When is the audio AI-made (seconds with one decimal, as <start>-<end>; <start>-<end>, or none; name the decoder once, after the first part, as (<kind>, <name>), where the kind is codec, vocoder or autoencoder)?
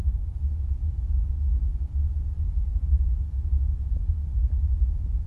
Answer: none